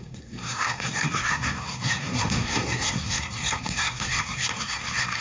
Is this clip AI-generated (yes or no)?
yes